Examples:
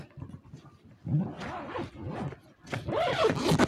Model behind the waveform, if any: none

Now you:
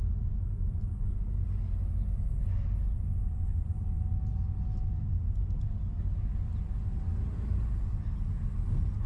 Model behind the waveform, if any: none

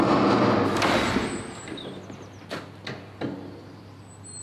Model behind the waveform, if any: none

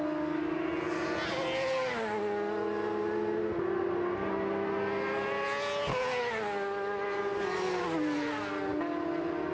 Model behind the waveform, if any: none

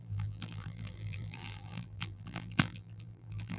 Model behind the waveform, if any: vocoder, BigVGAN v2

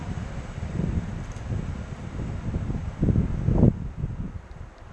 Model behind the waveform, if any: none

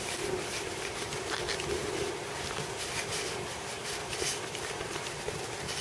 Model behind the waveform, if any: none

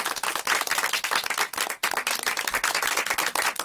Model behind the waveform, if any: none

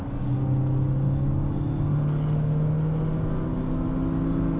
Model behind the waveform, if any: none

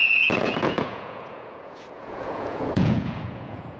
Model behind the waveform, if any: vocoder, Vocos